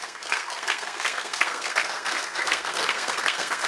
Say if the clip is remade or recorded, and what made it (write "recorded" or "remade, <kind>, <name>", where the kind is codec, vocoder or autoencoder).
remade, codec, SNAC